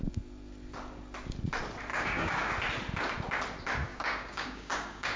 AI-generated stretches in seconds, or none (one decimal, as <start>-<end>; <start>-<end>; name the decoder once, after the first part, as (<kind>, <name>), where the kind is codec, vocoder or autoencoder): 1.9-2.5 (codec, DAC); 3.9-5.2